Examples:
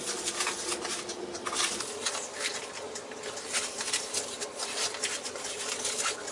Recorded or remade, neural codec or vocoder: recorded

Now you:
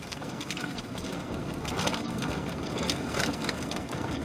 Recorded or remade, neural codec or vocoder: remade, codec, SNAC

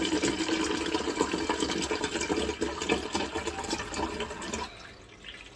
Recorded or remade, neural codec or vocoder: recorded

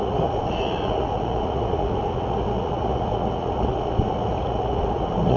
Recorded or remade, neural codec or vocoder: remade, vocoder, Vocos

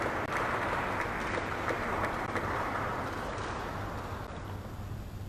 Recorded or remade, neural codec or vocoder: recorded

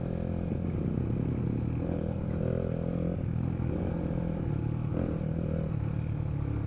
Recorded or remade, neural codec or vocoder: recorded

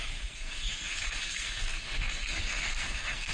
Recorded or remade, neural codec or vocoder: remade, codec, SNAC